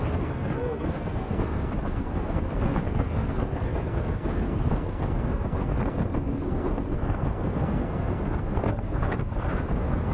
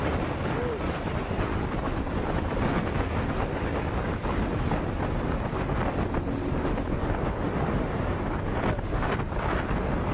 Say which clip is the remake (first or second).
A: first